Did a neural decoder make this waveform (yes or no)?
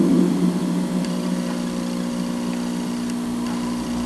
no